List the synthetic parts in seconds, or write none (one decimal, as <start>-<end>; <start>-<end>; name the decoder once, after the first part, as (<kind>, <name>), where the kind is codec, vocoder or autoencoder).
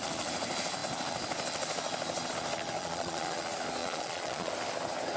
2.8-3.4 (vocoder, Vocos); 3.8-4.5